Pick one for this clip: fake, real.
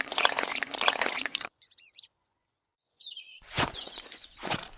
fake